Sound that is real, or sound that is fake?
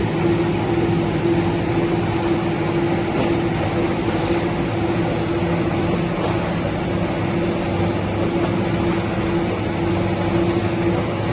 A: real